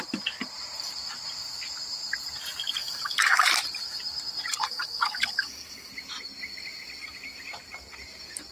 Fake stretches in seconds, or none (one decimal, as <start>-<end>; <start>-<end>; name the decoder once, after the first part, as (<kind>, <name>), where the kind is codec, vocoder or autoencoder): 2.8-3.5 (codec, DAC); 4.6-5.9